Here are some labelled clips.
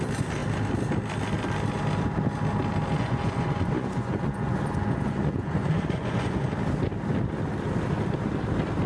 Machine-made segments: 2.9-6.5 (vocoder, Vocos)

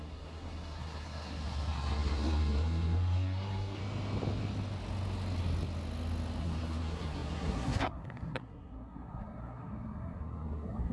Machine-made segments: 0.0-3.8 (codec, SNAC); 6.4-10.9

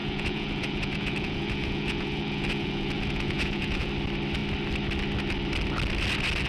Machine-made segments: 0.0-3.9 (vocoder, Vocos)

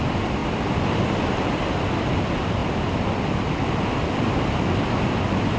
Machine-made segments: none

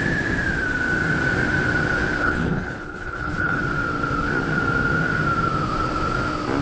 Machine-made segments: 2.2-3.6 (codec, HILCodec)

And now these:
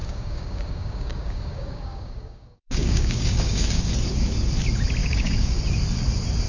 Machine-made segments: 0.0-3.9 (codec, DAC); 5.0-5.6

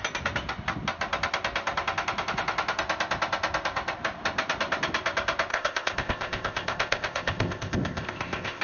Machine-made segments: 5.5-8.6 (codec, ZipCodec)

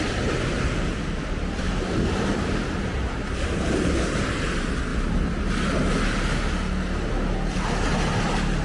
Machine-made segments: none